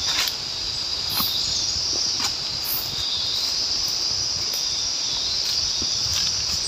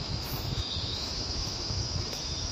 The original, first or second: first